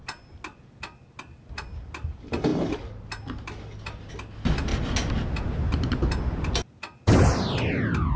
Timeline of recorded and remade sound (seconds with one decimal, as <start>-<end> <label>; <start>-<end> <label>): 0.0-8.2 recorded